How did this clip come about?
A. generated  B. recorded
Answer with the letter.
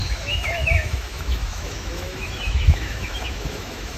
A